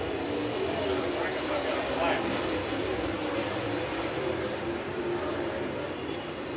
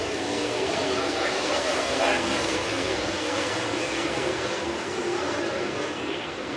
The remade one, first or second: second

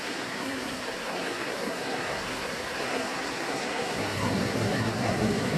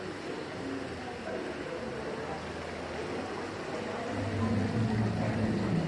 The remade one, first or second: first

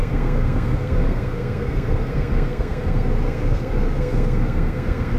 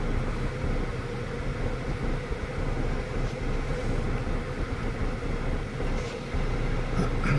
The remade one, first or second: first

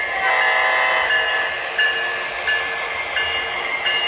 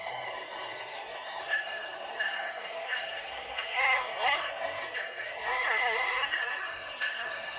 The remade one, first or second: second